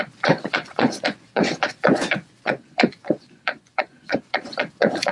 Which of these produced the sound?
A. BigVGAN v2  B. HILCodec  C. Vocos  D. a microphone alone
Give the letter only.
C